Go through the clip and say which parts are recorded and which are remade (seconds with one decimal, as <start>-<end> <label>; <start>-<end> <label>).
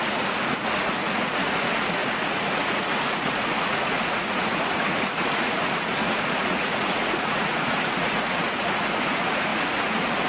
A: 0.0-10.3 remade